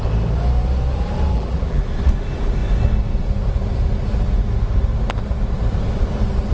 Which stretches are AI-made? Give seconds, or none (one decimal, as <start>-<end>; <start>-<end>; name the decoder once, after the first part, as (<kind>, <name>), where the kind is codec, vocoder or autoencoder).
1.3-1.9 (vocoder, BigVGAN v2)